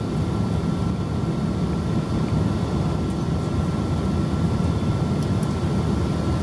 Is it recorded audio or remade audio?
recorded